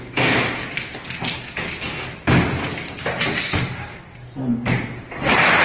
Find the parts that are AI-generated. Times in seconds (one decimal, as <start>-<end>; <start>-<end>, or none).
none